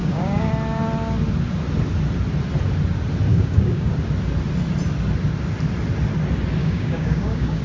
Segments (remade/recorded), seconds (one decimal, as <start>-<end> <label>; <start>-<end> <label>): 0.0-0.5 remade; 0.5-3.3 recorded; 3.3-3.9 remade; 3.9-6.6 recorded; 6.6-7.6 remade